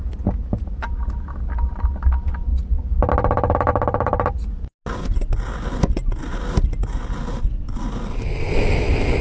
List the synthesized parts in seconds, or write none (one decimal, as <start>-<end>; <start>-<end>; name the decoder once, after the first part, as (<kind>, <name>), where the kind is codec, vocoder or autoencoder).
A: 2.5-3.1 (vocoder, BigVGAN v2); 3.7-4.3

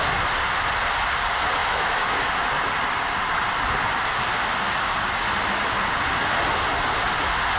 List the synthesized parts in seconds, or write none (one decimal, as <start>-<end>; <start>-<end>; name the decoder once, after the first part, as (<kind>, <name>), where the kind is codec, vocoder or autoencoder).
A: 1.6-2.3 (autoencoder, DAC-VAE)

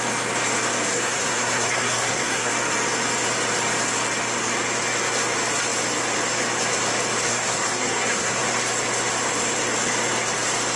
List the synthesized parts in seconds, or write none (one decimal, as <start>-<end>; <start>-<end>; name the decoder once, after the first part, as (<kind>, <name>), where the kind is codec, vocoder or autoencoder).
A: 0.9-2.5 (codec, SNAC); 7.3-8.4

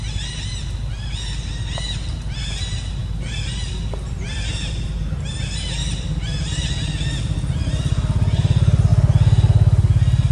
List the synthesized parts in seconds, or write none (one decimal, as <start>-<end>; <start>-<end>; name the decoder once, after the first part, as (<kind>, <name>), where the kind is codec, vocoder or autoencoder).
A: none

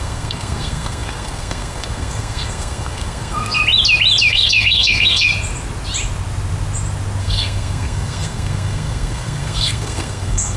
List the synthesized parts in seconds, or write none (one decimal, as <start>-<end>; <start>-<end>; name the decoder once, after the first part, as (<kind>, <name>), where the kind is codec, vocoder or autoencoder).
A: 0.0-3.6 (codec, SNAC); 4.3-5.3; 7.2-10.6

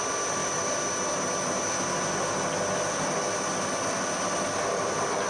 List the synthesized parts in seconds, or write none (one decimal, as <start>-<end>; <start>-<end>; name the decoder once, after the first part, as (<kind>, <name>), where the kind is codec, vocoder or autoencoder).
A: none

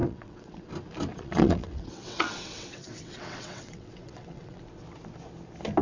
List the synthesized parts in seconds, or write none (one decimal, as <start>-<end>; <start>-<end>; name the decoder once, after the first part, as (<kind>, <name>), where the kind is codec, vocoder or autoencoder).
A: 0.0-0.7 (vocoder, WaveNeXt); 1.1-4.6